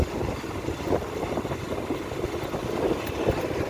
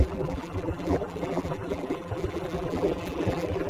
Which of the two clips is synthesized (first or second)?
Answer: second